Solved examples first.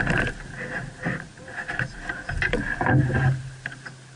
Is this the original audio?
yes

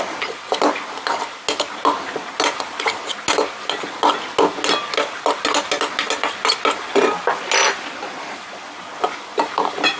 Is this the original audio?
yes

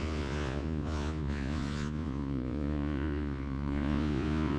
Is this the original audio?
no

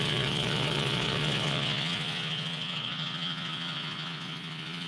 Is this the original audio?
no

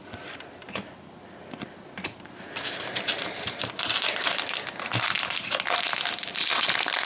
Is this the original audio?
yes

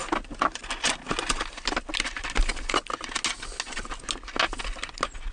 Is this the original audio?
yes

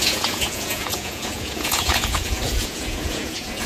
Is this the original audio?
no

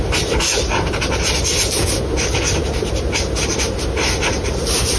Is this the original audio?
yes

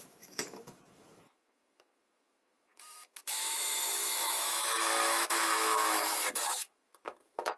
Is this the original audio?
no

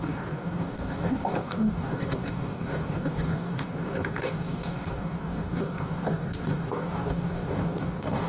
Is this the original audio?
no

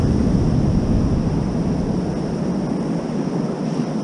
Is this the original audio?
yes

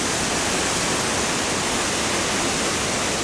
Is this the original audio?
yes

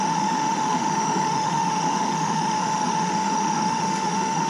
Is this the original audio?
no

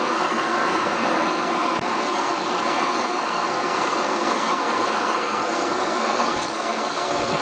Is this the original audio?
no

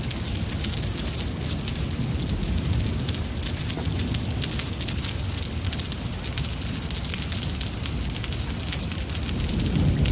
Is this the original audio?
yes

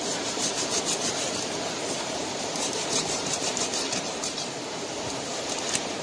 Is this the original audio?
no